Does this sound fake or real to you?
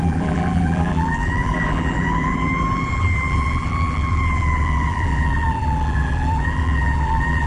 fake